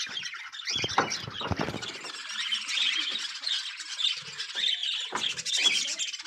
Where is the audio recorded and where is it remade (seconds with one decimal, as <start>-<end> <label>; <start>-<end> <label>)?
0.0-6.3 recorded